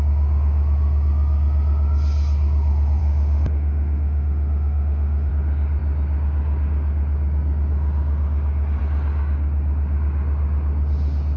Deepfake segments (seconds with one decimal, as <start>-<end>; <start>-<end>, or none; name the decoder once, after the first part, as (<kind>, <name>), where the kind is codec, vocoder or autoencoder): 3.0-5.3 (autoencoder, DAC-VAE)

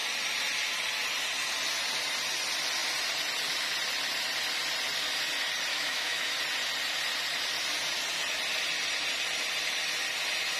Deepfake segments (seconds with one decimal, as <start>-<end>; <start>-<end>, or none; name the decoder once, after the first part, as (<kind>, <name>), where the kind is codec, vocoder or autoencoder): 5.7-6.3 (autoencoder, DAC-VAE)

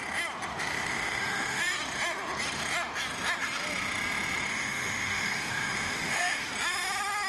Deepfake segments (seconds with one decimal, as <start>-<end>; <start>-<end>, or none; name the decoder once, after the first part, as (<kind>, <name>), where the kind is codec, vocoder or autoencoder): 0.5-1.6 (autoencoder, DAC-VAE); 4.5-6.5

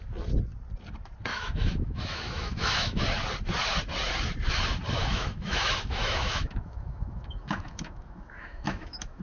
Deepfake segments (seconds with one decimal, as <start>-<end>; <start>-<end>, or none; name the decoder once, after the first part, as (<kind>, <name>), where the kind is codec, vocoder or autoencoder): 1.3-3.0 (autoencoder, DAC-VAE); 5.0-9.2

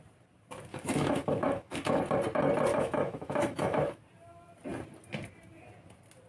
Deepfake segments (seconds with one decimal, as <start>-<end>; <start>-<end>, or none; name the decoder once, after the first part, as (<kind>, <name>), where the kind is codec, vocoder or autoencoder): 0.7-2.0 (autoencoder, DAC-VAE); 2.7-4.0

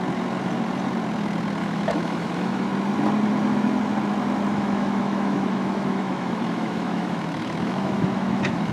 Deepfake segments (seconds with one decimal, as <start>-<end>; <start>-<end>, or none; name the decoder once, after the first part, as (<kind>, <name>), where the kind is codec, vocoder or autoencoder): 1.6-2.7 (autoencoder, DAC-VAE); 4.5-8.7